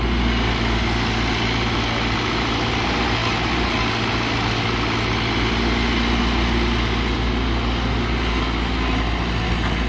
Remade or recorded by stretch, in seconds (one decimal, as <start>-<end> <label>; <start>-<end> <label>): 0.0-9.9 recorded